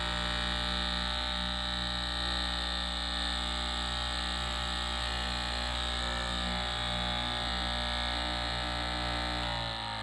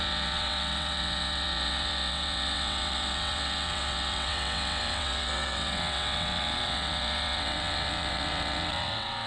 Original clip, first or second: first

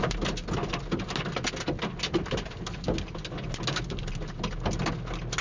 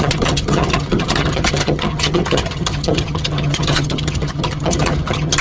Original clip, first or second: first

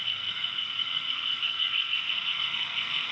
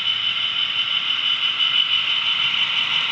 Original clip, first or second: second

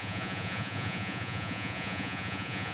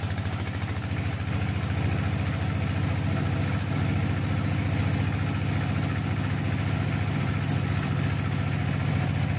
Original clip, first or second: second